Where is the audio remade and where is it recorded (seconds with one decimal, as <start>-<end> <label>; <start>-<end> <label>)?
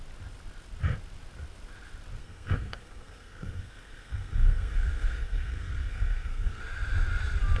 0.0-2.2 recorded; 2.2-6.6 remade; 6.6-7.6 recorded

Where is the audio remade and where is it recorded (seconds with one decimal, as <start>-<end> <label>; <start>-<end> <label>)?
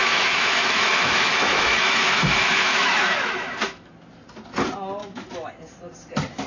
0.0-3.9 remade; 3.9-5.0 recorded; 5.0-5.5 remade; 5.5-6.5 recorded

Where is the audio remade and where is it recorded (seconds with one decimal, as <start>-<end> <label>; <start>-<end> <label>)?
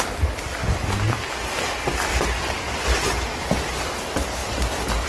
0.0-0.6 remade; 0.6-3.4 recorded; 3.4-4.4 remade; 4.4-5.1 recorded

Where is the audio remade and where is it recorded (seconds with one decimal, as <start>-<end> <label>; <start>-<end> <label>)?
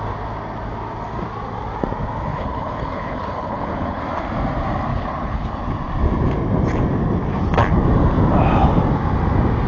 0.0-2.3 recorded; 2.3-4.0 remade; 4.0-4.9 recorded; 4.9-5.6 remade; 5.6-9.7 recorded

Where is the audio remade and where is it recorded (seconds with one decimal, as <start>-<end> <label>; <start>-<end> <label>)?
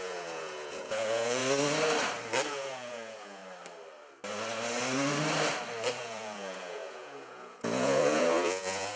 0.0-1.4 remade; 1.4-2.5 recorded; 2.5-3.4 remade; 3.4-6.0 recorded; 6.0-9.0 remade